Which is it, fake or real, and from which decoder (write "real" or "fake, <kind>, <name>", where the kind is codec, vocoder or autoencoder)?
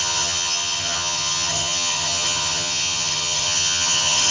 fake, vocoder, HiFi-GAN